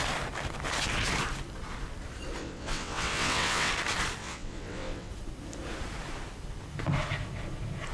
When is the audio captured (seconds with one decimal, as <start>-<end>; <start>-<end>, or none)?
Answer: 0.0-2.4; 3.7-4.2; 5.1-7.9